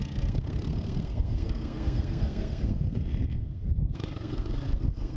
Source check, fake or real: fake